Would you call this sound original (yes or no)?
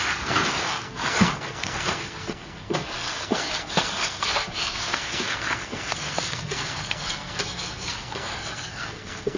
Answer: no